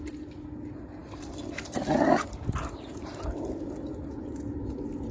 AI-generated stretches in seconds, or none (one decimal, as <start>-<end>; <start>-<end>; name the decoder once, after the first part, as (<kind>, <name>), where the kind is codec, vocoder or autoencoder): none